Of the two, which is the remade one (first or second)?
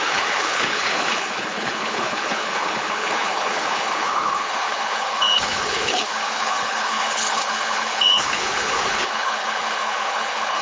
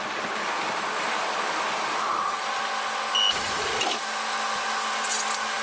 first